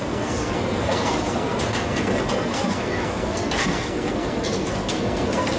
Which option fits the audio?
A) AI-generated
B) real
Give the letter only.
A